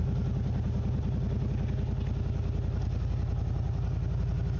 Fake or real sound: real